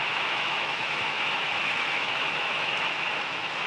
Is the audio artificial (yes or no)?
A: yes